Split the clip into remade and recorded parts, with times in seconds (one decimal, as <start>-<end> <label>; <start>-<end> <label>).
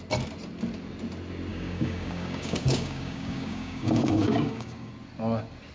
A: 0.0-1.5 recorded; 1.5-4.9 remade; 4.9-5.7 recorded